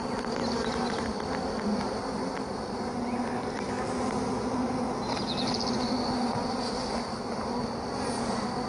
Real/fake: real